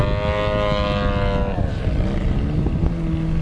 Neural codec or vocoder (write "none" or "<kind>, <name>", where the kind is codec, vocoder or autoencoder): none